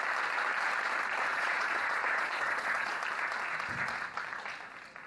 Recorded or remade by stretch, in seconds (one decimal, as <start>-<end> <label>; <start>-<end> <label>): 0.0-1.3 recorded; 1.3-3.0 remade; 3.0-5.1 recorded